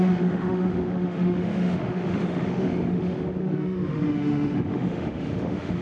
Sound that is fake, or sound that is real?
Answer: fake